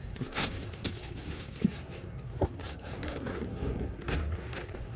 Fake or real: fake